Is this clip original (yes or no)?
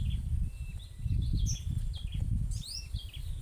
yes